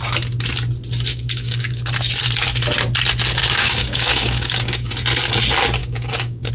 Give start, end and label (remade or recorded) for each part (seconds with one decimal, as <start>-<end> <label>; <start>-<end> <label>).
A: 0.0-1.1 recorded; 1.1-1.9 remade; 1.9-3.4 recorded; 3.4-4.9 remade; 4.9-5.8 recorded; 5.8-6.5 remade